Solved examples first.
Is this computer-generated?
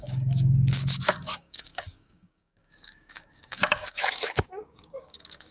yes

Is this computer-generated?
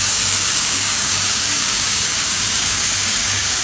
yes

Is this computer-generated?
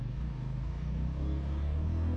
yes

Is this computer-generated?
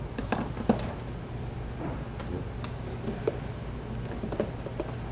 no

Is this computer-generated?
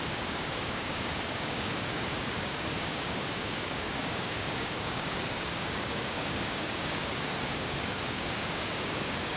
yes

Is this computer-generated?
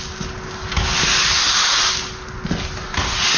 no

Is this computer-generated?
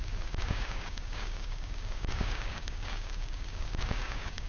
yes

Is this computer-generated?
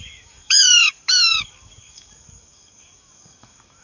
yes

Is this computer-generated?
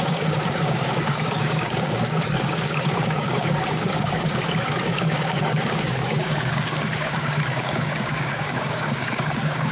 yes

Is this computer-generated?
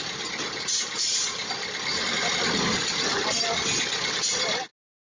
no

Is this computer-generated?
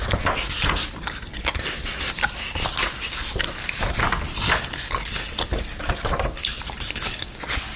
no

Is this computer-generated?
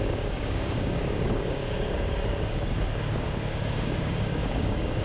yes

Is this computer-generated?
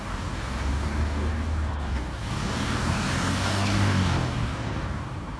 yes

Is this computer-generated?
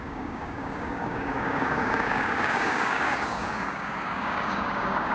yes